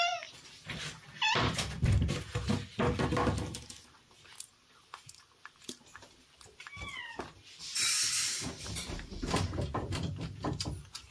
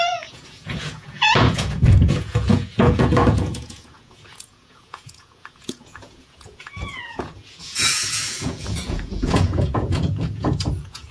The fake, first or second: second